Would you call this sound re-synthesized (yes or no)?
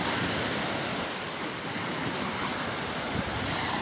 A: no